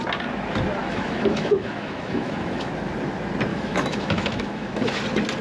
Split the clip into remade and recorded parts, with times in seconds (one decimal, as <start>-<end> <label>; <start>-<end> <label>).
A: 0.0-0.8 recorded; 0.8-2.7 remade; 2.7-3.5 recorded; 3.5-5.0 remade; 5.0-5.4 recorded